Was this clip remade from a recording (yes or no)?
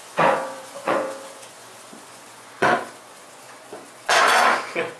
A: yes